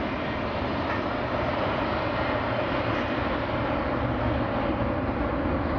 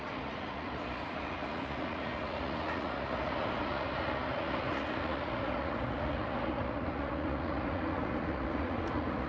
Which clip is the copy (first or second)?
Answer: second